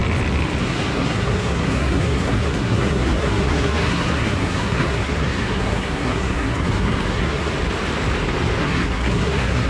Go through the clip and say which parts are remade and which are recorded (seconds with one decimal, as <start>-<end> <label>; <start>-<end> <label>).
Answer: 0.0-0.6 recorded; 0.6-7.5 remade; 7.5-8.6 recorded; 8.6-9.7 remade